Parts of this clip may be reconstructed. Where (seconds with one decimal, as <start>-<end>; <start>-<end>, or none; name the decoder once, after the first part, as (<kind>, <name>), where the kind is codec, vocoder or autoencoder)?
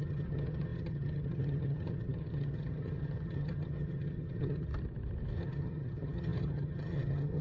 0.0-4.7 (vocoder, HiFi-GAN); 5.4-7.4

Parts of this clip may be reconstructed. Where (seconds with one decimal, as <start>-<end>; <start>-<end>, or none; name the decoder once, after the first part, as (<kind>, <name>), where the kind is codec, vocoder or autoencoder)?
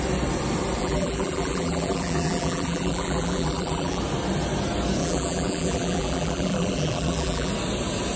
0.8-4.0 (vocoder, BigVGAN v2); 5.0-7.5